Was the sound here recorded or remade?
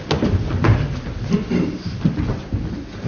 recorded